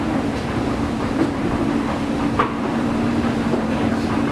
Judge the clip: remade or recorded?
remade